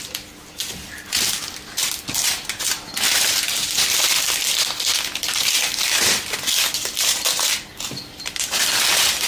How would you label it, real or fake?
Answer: real